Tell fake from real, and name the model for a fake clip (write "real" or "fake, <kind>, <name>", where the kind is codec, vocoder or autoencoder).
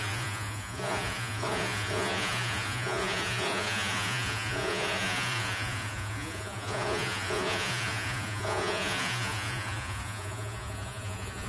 fake, vocoder, Vocos